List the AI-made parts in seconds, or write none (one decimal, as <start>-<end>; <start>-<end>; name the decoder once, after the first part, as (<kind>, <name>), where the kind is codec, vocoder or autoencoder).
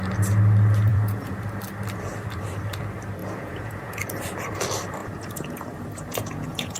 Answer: 0.9-1.4 (vocoder, Vocos); 3.2-4.0; 5.0-6.8